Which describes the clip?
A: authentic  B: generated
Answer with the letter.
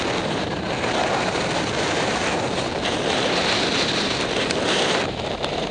B